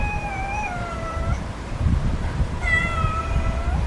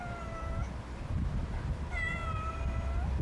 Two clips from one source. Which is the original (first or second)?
second